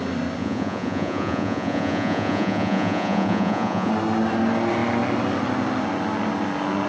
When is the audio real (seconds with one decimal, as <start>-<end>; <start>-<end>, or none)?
0.0-0.4; 3.9-6.9